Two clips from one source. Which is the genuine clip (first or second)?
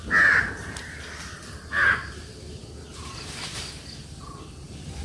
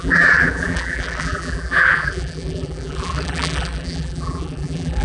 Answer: first